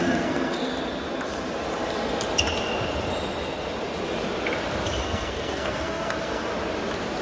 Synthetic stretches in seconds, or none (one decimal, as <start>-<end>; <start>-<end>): 0.0-0.7; 5.0-6.5